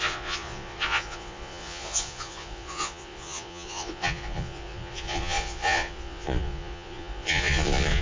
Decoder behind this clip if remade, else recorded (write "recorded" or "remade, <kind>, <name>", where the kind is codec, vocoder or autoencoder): remade, vocoder, Vocos